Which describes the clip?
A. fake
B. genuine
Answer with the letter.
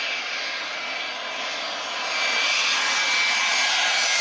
B